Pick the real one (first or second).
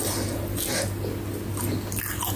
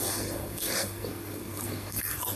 first